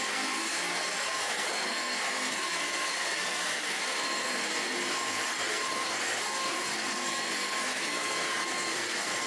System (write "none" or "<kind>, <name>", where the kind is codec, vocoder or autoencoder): codec, SNAC